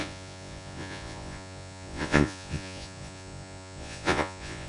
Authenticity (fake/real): fake